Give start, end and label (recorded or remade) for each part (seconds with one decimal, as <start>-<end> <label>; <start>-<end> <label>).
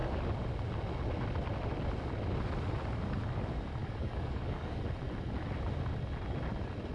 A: 0.0-3.8 recorded; 3.8-4.8 remade; 4.8-6.9 recorded